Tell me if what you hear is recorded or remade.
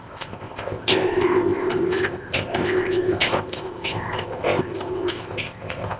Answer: remade